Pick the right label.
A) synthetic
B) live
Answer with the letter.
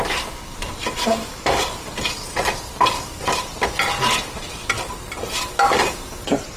B